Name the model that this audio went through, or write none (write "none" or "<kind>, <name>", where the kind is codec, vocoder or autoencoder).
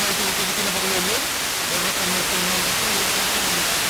none